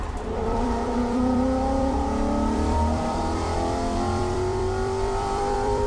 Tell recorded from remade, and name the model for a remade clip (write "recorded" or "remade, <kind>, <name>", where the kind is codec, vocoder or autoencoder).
remade, vocoder, BigVGAN v2